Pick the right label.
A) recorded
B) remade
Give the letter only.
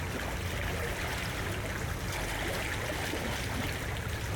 A